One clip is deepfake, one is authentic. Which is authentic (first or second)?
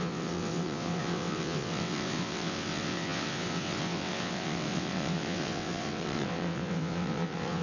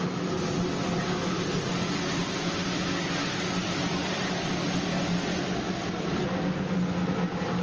second